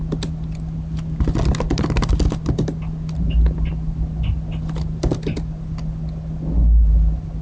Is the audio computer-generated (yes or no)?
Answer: no